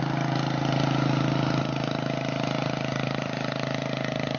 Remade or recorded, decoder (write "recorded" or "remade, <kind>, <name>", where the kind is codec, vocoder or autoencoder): recorded